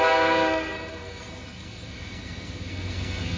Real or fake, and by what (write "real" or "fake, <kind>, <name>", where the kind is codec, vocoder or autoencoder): fake, codec, SNAC